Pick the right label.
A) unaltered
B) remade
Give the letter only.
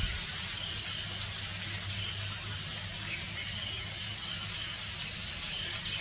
A